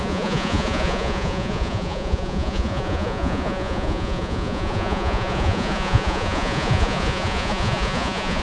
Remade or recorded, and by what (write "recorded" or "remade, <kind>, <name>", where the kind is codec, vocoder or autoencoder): remade, vocoder, Vocos